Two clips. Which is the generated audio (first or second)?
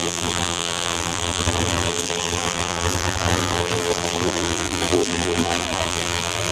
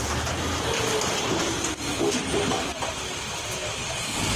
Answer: first